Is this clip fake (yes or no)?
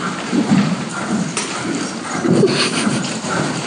yes